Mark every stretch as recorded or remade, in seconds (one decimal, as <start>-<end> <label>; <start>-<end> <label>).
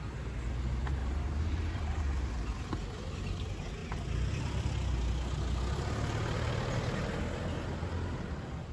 0.0-1.0 recorded; 1.0-2.0 remade; 2.0-8.7 recorded